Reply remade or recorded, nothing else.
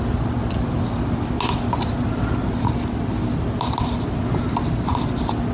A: recorded